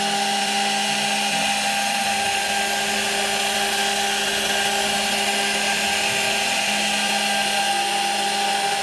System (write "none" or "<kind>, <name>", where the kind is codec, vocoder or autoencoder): none